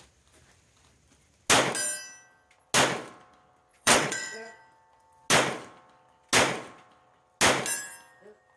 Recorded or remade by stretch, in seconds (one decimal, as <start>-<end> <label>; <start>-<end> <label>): 0.0-3.7 recorded; 3.7-4.6 remade; 4.6-8.6 recorded